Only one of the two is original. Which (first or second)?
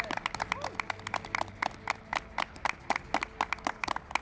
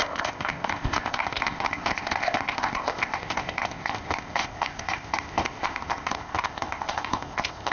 first